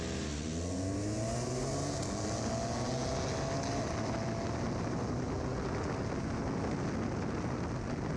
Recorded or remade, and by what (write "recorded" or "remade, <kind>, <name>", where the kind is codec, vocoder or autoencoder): recorded